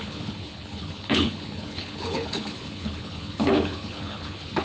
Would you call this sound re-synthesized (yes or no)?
yes